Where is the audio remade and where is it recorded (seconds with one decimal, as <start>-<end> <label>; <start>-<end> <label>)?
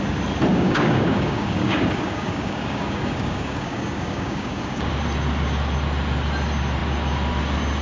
0.0-0.5 recorded; 0.5-4.9 remade; 4.9-7.8 recorded